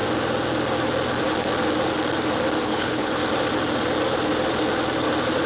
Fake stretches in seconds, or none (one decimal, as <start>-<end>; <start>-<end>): 2.6-3.2